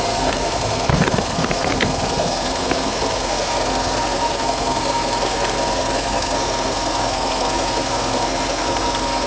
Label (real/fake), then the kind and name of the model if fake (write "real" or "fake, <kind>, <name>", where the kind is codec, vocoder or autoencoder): fake, codec, SNAC